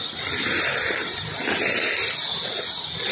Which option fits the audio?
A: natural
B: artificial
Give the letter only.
A